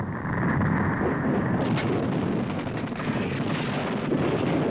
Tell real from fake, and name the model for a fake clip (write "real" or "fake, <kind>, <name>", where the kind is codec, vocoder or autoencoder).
real